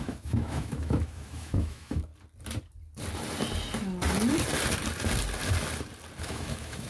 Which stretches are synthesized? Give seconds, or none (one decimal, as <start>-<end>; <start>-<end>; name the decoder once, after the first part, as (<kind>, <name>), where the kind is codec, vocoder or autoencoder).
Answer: 0.0-2.1 (autoencoder, DAC-VAE); 6.2-6.9